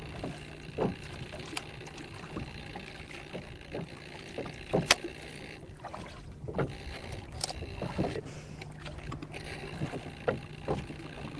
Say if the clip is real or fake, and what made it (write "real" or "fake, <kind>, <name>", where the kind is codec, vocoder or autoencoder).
fake, vocoder, BigVGAN v2